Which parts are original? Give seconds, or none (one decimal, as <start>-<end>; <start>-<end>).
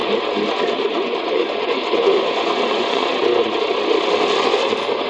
0.0-0.6; 1.8-2.7; 3.1-5.1